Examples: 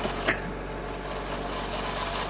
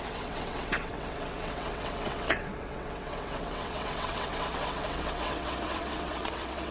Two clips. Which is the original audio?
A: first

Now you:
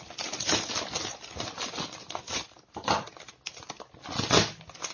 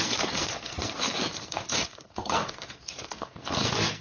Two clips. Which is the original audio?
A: first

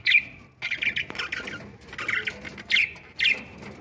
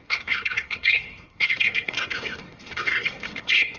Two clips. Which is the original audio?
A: first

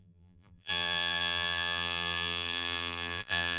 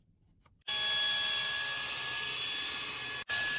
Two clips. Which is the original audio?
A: second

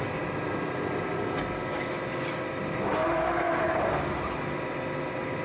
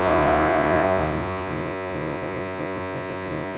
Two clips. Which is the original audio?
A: first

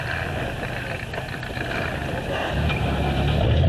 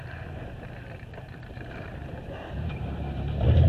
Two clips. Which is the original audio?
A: first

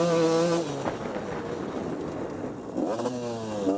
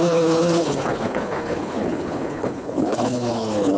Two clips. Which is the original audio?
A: first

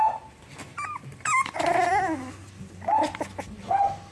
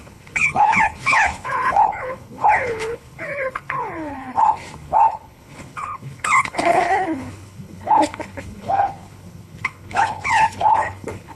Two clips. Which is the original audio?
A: first